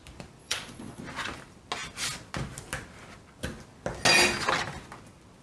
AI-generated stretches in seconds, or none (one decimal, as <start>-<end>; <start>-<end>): 0.4-1.0